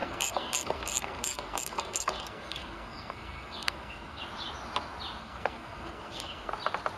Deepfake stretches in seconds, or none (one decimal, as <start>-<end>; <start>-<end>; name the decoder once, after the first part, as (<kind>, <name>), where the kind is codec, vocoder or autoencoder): 0.0-4.2 (codec, SNAC); 5.2-6.5